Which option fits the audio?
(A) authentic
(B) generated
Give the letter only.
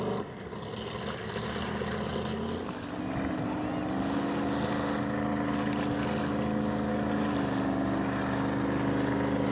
A